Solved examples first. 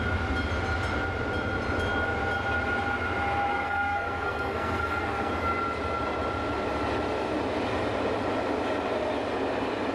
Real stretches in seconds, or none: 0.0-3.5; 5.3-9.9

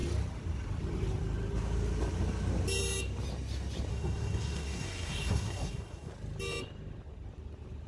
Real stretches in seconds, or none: 0.0-3.9; 6.1-7.9

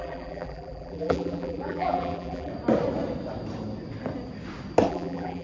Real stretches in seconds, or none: 2.5-4.9

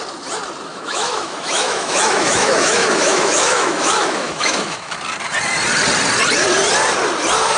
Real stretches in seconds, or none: 0.0-0.7; 4.9-7.6

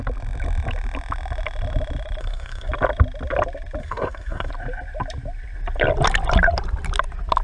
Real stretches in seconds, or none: 0.0-2.2; 2.7-3.8; 4.5-7.4

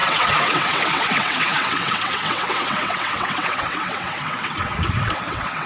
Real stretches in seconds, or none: none

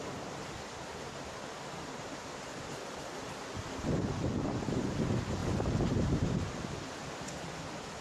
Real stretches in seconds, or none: 0.0-5.4; 5.9-8.0